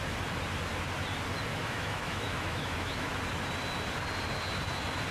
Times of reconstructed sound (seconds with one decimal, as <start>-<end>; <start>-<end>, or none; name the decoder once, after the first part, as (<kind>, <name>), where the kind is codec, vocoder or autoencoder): 1.5-3.2 (autoencoder, DAC-VAE)